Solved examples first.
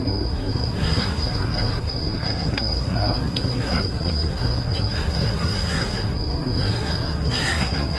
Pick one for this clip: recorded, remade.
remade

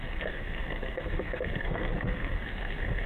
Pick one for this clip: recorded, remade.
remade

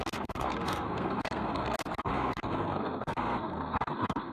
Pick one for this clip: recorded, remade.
remade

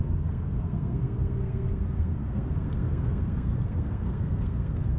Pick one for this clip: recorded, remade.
remade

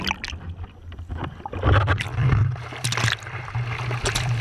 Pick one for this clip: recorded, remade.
recorded